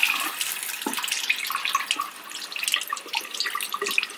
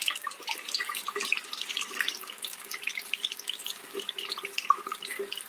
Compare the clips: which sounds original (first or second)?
first